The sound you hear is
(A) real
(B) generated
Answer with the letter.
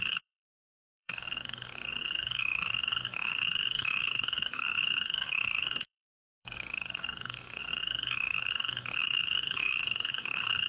B